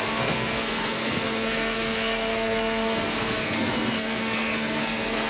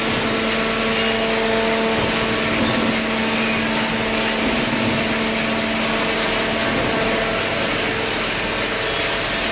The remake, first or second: first